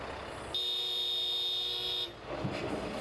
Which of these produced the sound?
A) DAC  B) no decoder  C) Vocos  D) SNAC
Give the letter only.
B